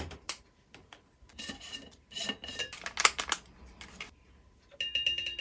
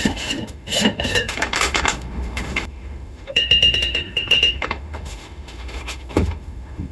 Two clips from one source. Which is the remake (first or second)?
second